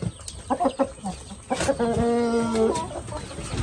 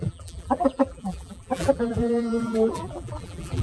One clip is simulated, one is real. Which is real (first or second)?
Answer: first